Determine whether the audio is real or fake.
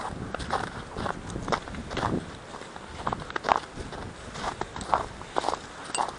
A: real